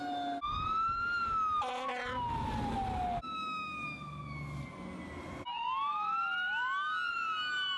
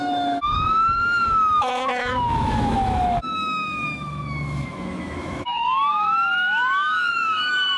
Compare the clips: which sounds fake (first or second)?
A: second